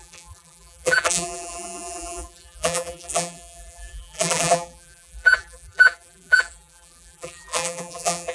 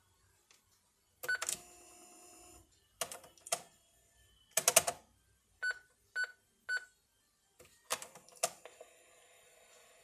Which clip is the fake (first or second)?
first